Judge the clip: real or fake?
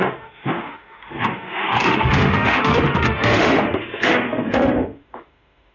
fake